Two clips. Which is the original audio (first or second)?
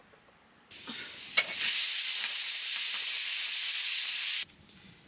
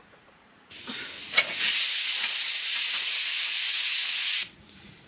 first